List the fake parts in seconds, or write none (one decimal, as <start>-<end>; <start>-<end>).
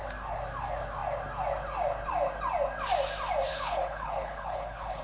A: 3.5-5.0